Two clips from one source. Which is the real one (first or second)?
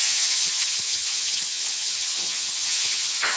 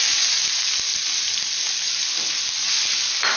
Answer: second